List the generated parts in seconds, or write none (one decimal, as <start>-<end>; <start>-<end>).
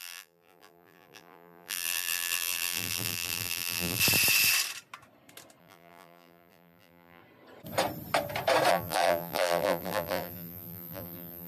0.0-4.0; 5.6-7.2; 8.7-11.5